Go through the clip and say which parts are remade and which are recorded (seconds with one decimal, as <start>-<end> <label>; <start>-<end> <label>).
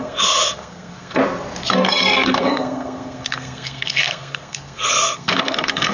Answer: 0.0-1.2 remade; 1.2-1.7 recorded; 1.7-5.9 remade